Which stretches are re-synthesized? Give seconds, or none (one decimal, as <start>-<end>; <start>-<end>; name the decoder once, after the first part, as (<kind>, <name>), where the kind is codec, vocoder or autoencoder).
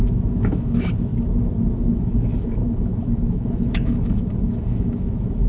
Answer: 0.0-1.1 (autoencoder, DAC-VAE); 1.7-5.5